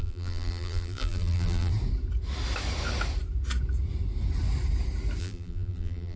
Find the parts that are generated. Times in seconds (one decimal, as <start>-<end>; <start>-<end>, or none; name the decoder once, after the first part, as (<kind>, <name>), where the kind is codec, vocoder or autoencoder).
0.0-1.7 (vocoder, BigVGAN v2); 5.2-6.2